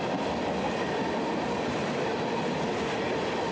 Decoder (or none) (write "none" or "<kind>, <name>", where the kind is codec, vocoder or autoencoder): none